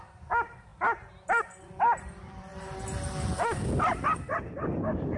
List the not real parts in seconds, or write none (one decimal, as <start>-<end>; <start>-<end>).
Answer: none